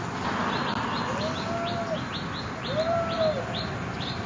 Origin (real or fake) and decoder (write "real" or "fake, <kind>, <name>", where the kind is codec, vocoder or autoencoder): real